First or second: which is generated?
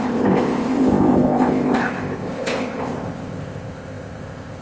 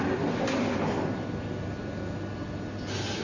first